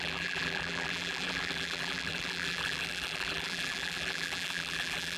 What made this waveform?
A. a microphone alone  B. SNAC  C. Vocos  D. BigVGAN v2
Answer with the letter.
D